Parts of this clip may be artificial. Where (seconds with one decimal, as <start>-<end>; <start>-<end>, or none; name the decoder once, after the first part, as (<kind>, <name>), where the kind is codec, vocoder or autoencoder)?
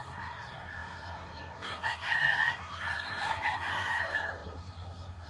0.0-5.3 (codec, SNAC)